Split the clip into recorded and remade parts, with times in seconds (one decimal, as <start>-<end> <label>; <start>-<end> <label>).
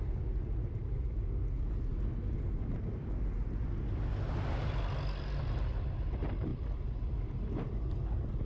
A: 0.0-8.5 recorded